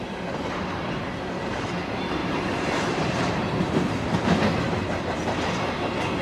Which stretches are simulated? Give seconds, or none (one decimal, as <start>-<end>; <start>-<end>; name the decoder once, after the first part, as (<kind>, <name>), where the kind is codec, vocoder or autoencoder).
2.2-4.4 (vocoder, BigVGAN v2)